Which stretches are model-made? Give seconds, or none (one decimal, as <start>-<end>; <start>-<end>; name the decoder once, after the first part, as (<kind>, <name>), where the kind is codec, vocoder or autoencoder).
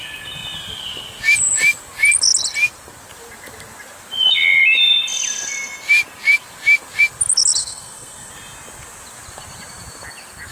7.6-8.3 (codec, SNAC)